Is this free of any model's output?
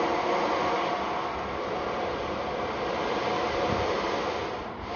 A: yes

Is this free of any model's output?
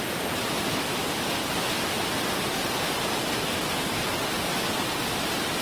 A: yes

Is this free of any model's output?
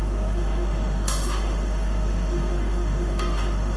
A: no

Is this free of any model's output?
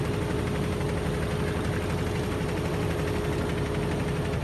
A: yes